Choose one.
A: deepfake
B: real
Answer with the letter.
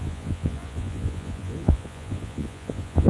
A